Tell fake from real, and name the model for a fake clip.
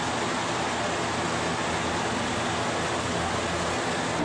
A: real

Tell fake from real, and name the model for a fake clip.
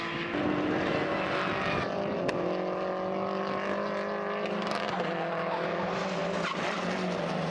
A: real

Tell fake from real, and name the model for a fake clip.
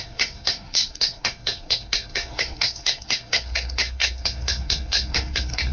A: fake, codec, SNAC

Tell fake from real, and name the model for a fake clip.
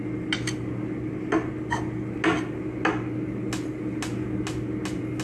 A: real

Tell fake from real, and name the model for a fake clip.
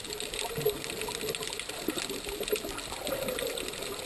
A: real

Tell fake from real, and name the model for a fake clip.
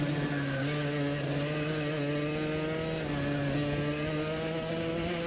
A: real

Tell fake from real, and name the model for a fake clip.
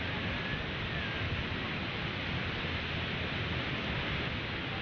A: real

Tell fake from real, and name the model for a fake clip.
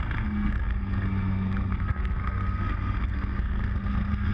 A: fake, codec, SNAC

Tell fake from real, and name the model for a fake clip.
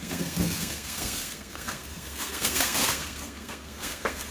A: fake, codec, SNAC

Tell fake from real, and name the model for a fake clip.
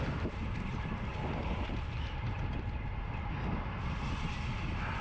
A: real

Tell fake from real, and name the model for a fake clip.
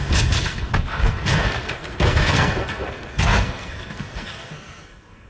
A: fake, codec, SNAC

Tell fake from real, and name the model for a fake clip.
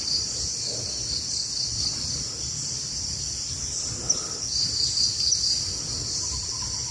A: real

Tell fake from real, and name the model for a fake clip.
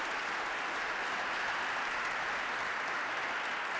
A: real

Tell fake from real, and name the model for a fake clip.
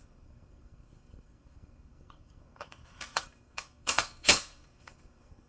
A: fake, codec, SNAC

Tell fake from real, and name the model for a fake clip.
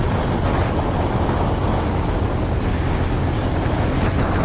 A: real